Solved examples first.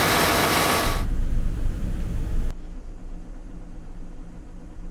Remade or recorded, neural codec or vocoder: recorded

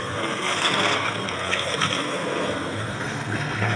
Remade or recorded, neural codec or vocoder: remade, codec, SNAC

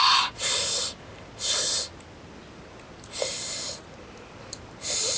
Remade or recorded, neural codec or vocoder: recorded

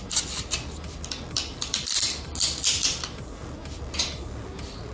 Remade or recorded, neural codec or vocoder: recorded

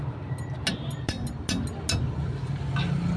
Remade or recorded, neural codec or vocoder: recorded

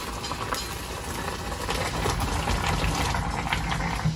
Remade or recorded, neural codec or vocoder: recorded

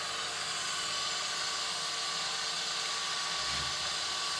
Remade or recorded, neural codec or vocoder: recorded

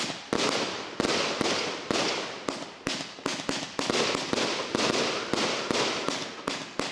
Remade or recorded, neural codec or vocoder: recorded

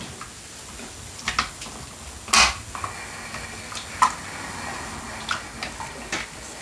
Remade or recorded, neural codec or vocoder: recorded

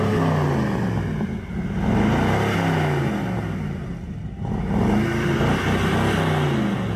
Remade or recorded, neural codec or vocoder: recorded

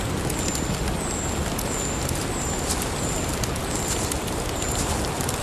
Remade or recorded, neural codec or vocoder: recorded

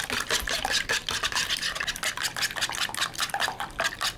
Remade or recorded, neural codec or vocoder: recorded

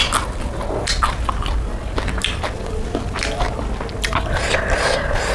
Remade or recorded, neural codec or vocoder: recorded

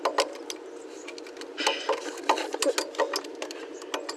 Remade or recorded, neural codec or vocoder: recorded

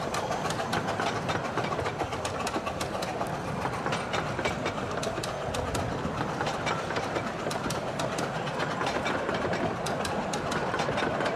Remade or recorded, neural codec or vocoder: recorded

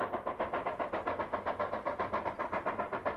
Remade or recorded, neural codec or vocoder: recorded